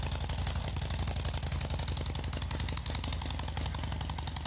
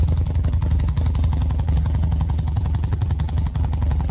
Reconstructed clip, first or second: second